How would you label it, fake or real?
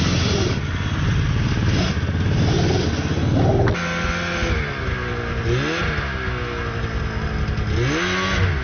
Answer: real